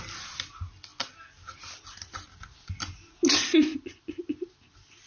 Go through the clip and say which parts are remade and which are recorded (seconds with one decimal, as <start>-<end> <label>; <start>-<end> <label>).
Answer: 0.0-5.1 recorded